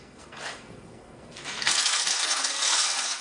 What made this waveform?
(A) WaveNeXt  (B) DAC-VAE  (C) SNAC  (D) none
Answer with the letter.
C